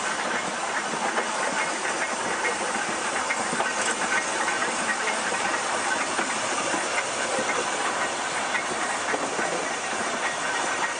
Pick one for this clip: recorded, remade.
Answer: recorded